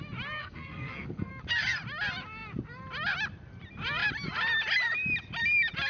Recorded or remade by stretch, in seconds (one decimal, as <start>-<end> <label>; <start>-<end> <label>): 0.0-0.4 recorded; 0.4-1.3 remade; 1.3-5.9 recorded